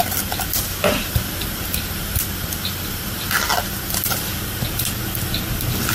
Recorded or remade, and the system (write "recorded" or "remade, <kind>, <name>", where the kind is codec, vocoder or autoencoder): recorded